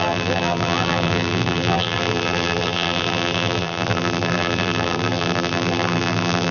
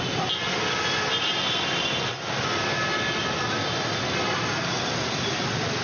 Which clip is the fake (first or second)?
first